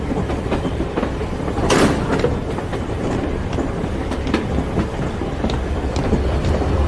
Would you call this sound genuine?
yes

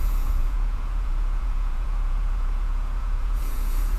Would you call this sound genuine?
no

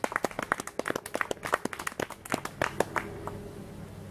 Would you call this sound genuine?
yes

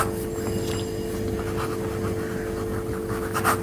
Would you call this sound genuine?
yes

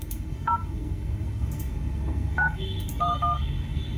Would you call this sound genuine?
no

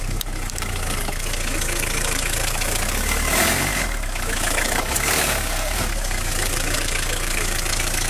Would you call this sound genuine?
no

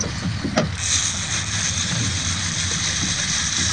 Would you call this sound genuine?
yes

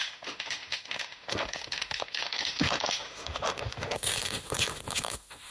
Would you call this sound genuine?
no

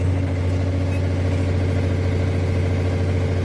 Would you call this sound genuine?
yes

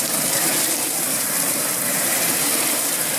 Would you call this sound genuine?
no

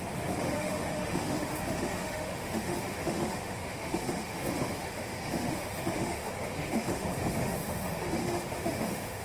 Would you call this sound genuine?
no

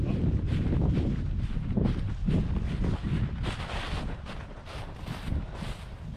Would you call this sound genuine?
yes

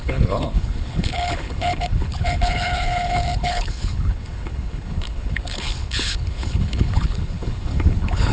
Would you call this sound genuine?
no